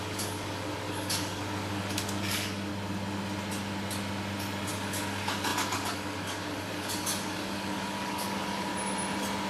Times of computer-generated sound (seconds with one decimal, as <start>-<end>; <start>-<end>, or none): 0.0-2.7; 4.7-8.7